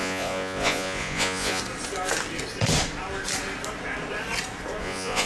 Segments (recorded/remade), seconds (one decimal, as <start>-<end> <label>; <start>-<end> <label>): 0.0-1.6 remade; 1.6-4.8 recorded; 4.8-5.3 remade